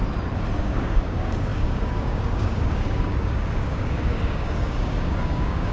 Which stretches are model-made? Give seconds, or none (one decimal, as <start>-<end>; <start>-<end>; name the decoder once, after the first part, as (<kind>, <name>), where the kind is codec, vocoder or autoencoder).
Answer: 0.6-5.7 (codec, DAC)